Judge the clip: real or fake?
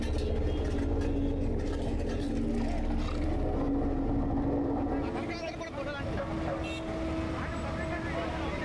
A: real